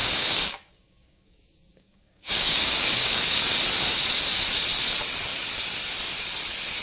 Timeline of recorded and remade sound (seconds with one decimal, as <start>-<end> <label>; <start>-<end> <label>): 0.0-3.4 remade; 3.4-6.8 recorded